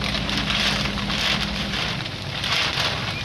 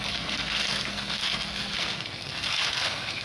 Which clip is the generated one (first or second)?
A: second